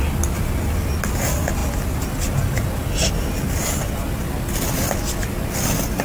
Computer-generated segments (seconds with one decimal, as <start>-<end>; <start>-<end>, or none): none